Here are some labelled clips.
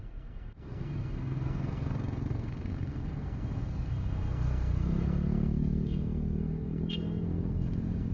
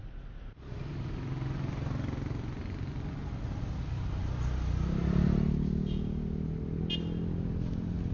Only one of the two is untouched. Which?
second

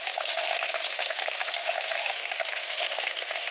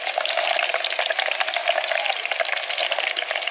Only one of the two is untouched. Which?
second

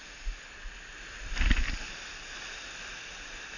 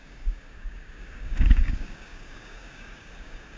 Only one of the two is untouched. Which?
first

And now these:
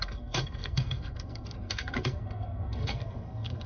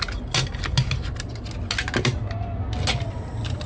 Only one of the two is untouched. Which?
second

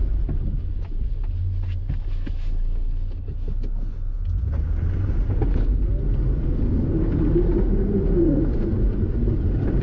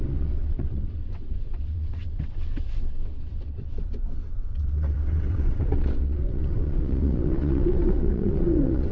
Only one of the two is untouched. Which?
first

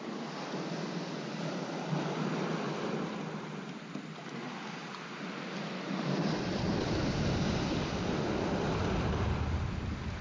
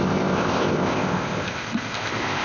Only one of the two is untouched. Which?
first